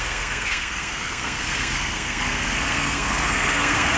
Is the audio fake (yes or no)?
yes